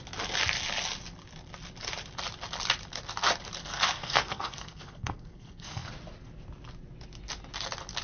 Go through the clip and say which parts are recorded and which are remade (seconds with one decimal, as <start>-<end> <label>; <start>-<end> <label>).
0.0-3.6 recorded; 3.6-5.9 remade; 5.9-8.0 recorded